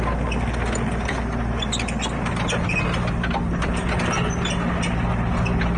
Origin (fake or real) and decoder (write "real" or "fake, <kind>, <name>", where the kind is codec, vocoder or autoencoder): real